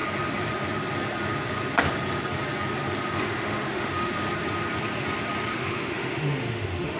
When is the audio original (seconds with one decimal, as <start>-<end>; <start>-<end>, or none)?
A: 0.0-3.2; 4.2-5.5

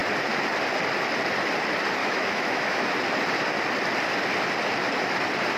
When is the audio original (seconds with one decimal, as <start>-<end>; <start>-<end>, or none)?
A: 0.0-2.0; 2.9-5.6

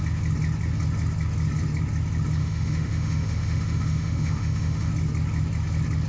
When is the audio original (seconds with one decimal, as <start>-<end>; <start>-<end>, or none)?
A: 0.0-2.4; 4.9-6.1